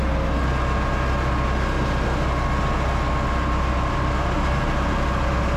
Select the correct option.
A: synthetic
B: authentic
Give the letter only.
B